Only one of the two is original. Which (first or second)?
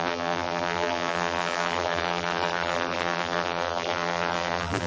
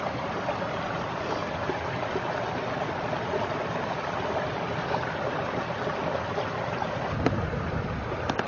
second